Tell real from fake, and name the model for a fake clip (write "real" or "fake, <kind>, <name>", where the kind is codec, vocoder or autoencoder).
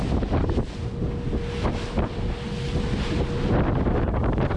real